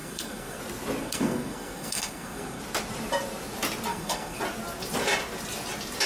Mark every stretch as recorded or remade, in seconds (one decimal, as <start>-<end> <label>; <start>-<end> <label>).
0.0-0.6 remade; 0.6-1.0 recorded; 1.0-2.6 remade; 2.6-3.9 recorded; 3.9-4.4 remade; 4.4-6.1 recorded